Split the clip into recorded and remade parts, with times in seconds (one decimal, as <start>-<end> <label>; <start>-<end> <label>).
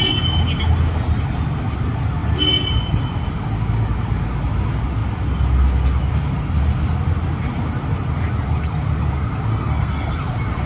0.0-9.5 recorded; 9.5-10.1 remade; 10.1-10.7 recorded